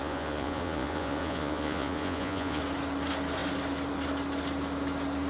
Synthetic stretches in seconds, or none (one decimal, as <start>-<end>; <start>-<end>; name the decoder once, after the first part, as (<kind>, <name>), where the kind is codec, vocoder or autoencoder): 0.0-2.6 (vocoder, Vocos)